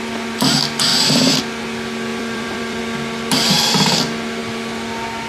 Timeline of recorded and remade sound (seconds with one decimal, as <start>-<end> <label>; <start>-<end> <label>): 0.0-0.9 recorded; 0.9-1.4 remade; 1.4-2.1 recorded; 2.1-2.8 remade; 2.8-5.3 recorded